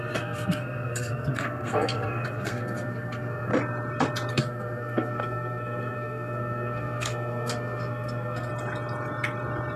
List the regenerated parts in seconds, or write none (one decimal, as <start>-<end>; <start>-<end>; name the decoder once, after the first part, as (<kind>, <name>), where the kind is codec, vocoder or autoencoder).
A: 0.0-3.5 (codec, SNAC); 4.3-8.5